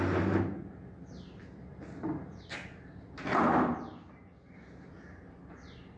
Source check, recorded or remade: recorded